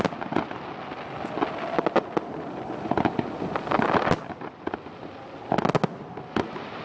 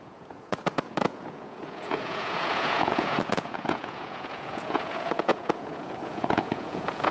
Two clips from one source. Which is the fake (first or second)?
second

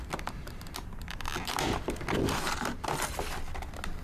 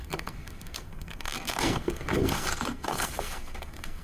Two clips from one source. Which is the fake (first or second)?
second